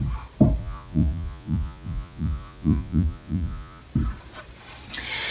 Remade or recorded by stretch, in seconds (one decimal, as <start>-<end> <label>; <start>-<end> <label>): 0.0-0.6 recorded; 0.6-3.8 remade; 3.8-5.3 recorded